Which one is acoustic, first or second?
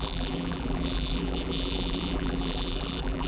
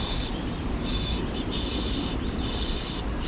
second